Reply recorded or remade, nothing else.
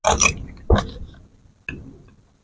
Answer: recorded